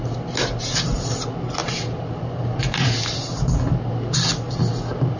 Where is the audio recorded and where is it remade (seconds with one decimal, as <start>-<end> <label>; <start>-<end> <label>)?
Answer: 0.0-5.2 recorded